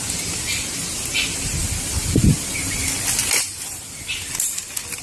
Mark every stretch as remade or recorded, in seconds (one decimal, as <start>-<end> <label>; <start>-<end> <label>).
0.0-1.6 recorded; 1.6-4.6 remade; 4.6-5.0 recorded